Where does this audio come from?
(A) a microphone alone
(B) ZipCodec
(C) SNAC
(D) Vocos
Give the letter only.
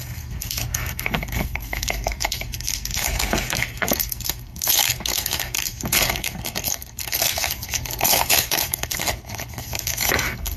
C